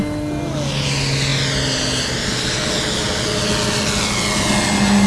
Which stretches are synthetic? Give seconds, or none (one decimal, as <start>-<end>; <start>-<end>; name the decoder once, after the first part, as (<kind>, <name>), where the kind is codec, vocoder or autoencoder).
none